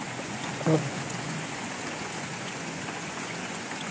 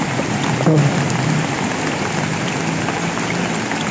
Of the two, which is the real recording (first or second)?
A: second